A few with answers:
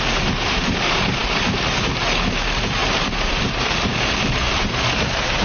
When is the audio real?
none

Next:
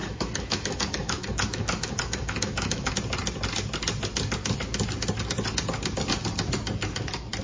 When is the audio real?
2.9-7.4

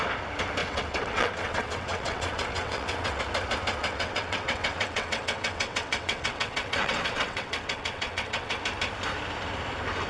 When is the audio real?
0.0-0.6; 3.2-3.8; 8.6-10.1

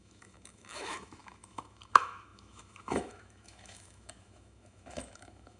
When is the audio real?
none

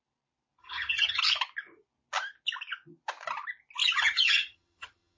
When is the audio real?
0.0-0.6; 1.2-3.8